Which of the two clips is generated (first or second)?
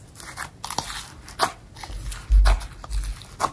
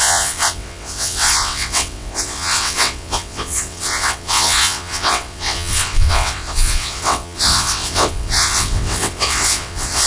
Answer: second